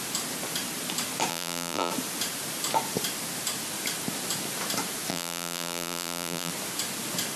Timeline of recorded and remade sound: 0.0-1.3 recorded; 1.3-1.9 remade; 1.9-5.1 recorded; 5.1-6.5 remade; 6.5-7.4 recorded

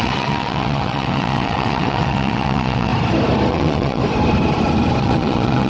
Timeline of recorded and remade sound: 0.0-2.9 remade; 2.9-3.5 recorded; 3.5-4.0 remade; 4.0-5.0 recorded; 5.0-5.7 remade